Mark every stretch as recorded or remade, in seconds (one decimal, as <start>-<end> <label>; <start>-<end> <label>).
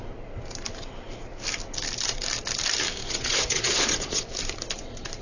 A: 0.0-3.0 recorded; 3.0-4.2 remade; 4.2-5.2 recorded